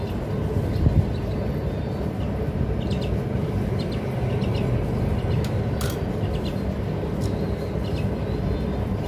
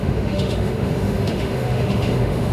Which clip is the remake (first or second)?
second